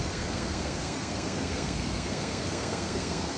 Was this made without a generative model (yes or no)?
no